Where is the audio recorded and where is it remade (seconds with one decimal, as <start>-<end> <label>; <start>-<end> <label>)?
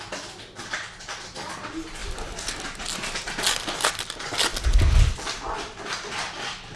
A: 0.0-6.8 recorded